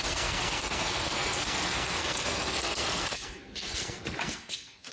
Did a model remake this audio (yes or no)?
yes